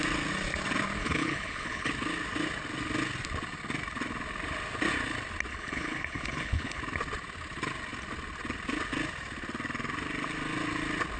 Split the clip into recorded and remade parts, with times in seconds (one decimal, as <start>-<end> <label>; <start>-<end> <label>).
0.0-1.0 recorded; 1.0-1.9 remade; 1.9-5.5 recorded; 5.5-6.8 remade; 6.8-11.2 recorded